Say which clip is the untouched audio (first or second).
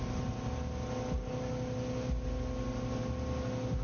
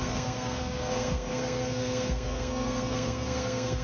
first